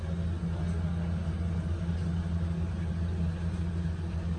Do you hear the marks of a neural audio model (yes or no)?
no